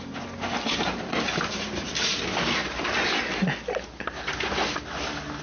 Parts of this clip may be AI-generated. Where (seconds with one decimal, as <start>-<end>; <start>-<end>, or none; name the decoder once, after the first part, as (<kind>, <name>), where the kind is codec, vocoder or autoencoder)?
none

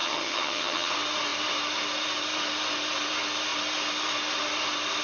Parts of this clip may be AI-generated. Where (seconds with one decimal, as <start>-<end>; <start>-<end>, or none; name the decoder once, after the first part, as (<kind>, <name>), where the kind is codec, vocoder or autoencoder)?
0.0-0.9 (vocoder, HiFi-GAN)

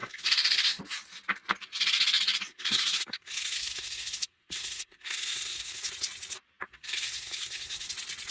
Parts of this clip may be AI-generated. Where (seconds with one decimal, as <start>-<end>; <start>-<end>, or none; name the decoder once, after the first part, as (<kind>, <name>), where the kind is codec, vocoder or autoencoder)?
0.0-0.8 (codec, SNAC); 2.5-5.9; 6.7-7.9

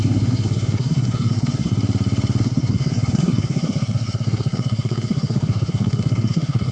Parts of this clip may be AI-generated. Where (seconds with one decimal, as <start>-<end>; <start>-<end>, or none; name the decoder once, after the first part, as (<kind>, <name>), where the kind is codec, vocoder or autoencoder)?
0.0-1.7 (codec, SNAC); 2.4-6.7

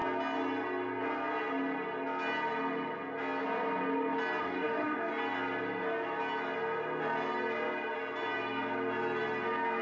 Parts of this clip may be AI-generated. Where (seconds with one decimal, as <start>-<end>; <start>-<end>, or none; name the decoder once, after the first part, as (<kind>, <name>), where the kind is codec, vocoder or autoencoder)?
4.4-5.1 (codec, DAC)

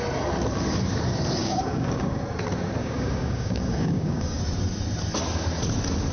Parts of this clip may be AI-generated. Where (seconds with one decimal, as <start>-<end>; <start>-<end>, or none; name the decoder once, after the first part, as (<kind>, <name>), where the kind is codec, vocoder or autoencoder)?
1.4-2.2 (codec, DAC); 2.8-4.4

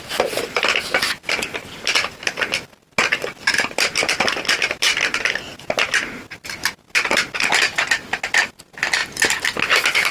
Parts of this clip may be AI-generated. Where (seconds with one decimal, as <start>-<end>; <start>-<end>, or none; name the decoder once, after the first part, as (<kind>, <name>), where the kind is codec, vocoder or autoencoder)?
none

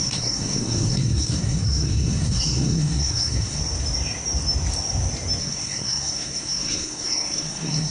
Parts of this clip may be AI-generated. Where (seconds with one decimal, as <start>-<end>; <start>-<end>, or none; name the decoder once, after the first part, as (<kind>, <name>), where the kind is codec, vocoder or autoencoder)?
0.0-3.6 (codec, SNAC); 5.4-7.9